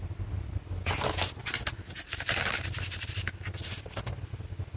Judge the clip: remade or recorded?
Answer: recorded